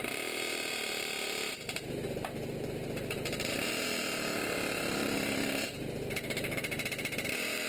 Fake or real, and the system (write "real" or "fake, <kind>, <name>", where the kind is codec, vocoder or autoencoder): fake, vocoder, BigVGAN v2